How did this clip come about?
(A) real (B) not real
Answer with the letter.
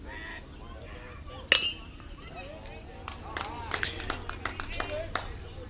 A